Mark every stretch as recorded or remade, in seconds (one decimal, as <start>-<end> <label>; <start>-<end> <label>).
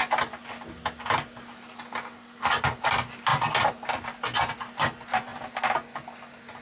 0.0-6.6 recorded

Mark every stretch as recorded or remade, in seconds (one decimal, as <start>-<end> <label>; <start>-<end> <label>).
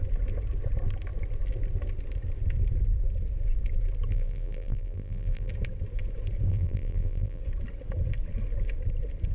0.0-4.1 recorded; 4.1-5.5 remade; 5.5-6.5 recorded; 6.5-7.4 remade; 7.4-9.3 recorded